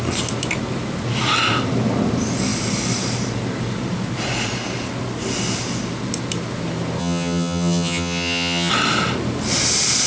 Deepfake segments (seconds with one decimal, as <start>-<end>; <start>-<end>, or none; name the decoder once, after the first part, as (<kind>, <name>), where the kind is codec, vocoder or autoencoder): 7.0-8.7 (vocoder, HiFi-GAN)